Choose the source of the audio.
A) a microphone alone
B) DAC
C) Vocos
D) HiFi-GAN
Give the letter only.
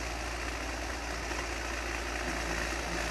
A